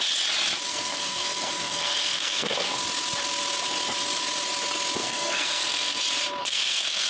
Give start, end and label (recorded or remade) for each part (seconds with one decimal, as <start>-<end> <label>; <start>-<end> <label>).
0.0-0.7 recorded; 0.7-2.8 remade; 2.8-5.0 recorded; 5.0-6.0 remade; 6.0-6.4 recorded; 6.4-7.1 remade